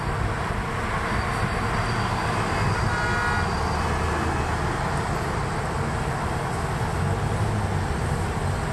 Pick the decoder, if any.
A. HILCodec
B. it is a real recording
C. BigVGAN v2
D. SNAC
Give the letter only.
B